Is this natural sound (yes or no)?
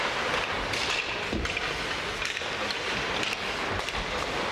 yes